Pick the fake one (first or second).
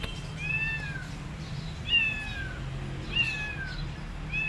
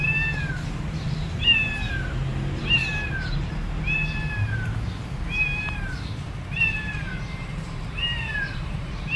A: second